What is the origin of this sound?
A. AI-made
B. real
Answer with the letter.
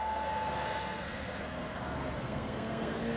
A